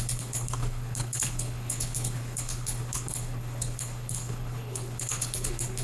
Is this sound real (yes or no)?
no